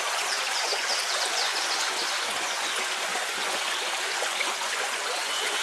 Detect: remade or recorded remade